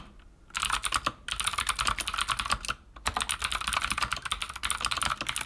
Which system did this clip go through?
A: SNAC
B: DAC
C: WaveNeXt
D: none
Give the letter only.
D